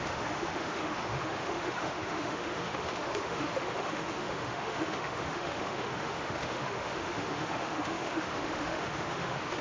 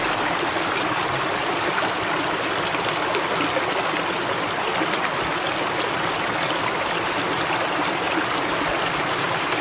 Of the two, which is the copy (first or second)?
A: first